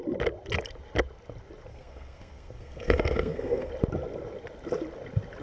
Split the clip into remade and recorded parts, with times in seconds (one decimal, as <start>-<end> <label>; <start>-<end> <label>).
0.0-1.7 recorded; 1.7-3.7 remade; 3.7-5.4 recorded